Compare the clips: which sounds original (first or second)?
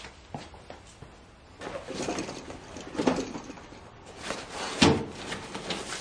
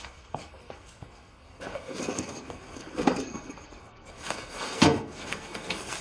first